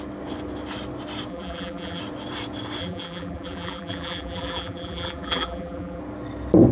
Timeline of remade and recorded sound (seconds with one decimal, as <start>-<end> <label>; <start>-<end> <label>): 0.0-1.3 recorded; 1.3-2.0 remade; 2.0-2.8 recorded; 2.8-6.0 remade; 6.0-6.7 recorded